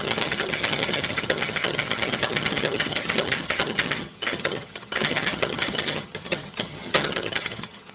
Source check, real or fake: fake